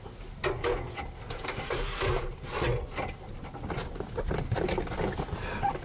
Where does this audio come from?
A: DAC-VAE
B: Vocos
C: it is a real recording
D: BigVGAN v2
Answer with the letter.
C